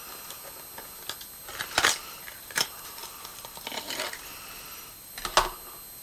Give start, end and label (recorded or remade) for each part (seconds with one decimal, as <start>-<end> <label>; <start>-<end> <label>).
0.0-1.5 recorded; 1.5-2.6 remade; 2.6-3.0 recorded; 3.0-5.1 remade; 5.1-6.0 recorded